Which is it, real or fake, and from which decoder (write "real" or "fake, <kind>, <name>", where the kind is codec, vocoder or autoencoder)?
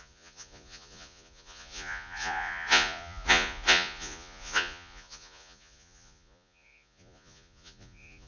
fake, vocoder, Vocos